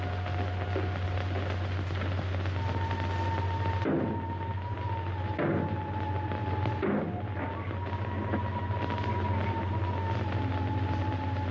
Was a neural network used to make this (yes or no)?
no